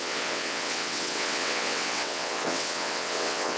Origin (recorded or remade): remade